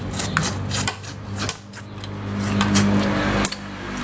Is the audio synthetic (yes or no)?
no